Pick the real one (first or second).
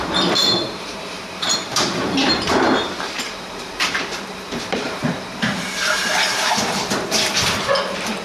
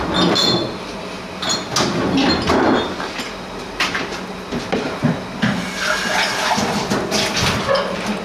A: second